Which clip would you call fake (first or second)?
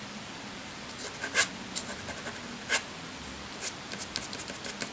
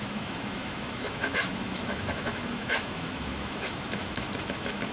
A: second